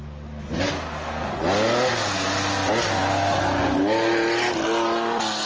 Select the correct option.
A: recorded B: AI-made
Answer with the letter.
A